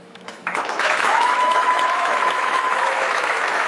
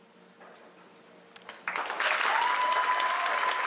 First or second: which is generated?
first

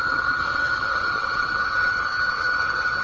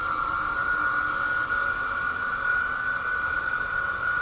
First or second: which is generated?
first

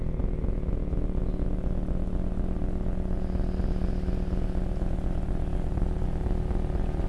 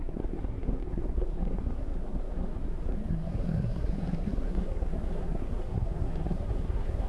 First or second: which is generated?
second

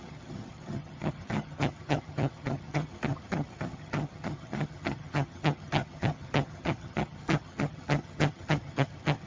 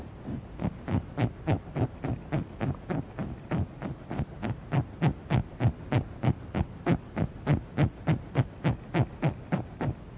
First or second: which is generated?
first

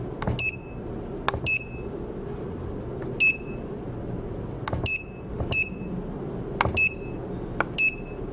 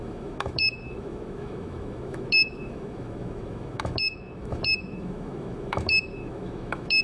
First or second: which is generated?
second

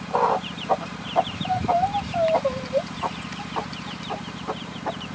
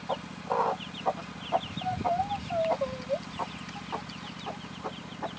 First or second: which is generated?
first